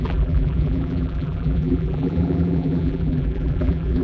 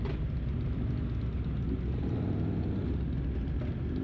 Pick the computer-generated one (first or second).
first